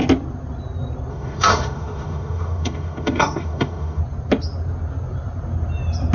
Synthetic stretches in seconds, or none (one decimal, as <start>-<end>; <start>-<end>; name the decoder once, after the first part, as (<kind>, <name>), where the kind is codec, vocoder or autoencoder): 1.1-4.0 (autoencoder, DAC-VAE)